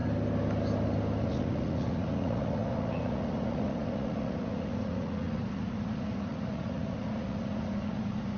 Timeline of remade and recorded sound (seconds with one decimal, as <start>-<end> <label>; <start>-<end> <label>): 0.0-1.2 recorded; 1.2-8.4 remade